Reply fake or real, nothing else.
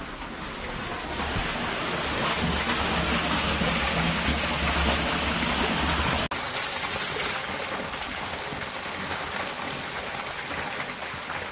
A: real